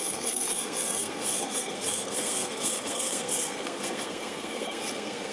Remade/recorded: remade